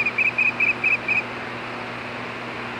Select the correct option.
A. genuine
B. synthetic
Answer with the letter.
A